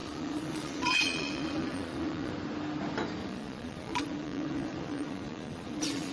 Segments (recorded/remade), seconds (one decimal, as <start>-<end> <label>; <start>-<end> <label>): 0.0-2.3 remade; 2.3-3.2 recorded; 3.2-6.1 remade